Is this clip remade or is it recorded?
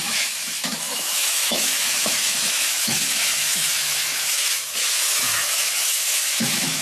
remade